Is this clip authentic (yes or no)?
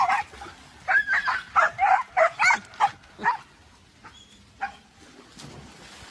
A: yes